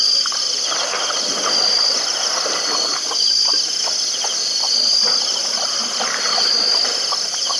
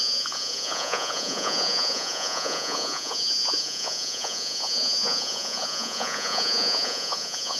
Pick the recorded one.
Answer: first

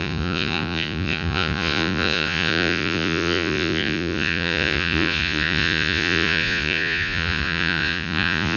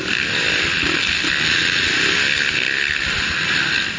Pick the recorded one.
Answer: second